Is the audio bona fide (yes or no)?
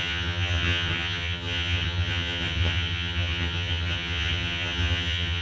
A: no